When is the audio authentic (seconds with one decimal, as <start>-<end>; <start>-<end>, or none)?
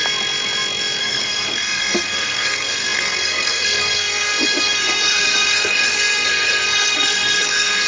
0.0-1.0